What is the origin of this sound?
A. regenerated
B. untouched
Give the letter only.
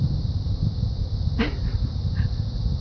B